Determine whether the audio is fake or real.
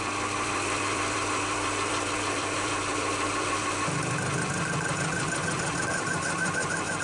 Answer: fake